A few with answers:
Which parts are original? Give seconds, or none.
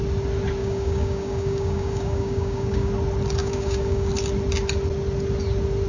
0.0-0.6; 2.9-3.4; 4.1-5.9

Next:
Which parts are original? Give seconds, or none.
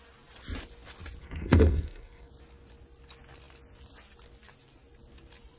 0.0-1.2; 2.3-5.6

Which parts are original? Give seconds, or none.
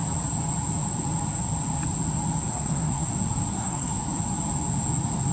0.0-2.5; 3.1-3.5; 4.0-5.3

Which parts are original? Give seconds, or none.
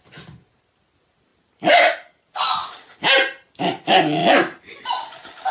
0.0-5.5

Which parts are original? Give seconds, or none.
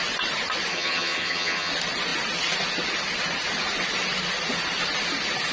0.0-0.7; 1.7-5.5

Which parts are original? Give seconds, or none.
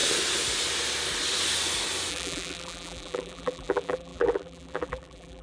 0.0-2.1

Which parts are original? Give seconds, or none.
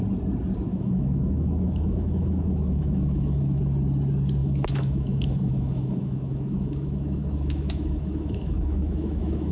0.0-0.7; 3.6-4.4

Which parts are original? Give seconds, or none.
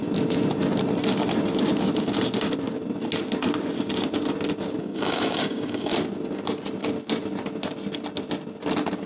0.0-4.8; 5.9-9.1